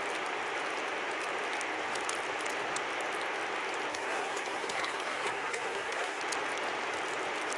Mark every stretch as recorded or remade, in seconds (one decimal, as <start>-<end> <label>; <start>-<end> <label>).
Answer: 0.0-3.9 recorded; 3.9-6.2 remade; 6.2-7.6 recorded